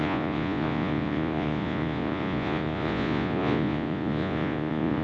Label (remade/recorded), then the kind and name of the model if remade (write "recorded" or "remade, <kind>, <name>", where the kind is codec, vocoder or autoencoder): remade, vocoder, Vocos